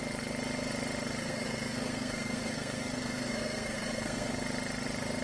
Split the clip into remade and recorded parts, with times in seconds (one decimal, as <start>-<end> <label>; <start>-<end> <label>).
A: 0.0-1.2 recorded; 1.2-4.3 remade; 4.3-5.2 recorded